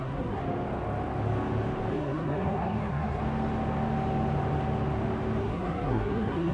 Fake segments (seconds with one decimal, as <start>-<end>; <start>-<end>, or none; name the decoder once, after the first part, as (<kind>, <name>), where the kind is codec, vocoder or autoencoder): 0.0-0.4 (codec, SNAC); 1.9-3.2; 5.4-6.5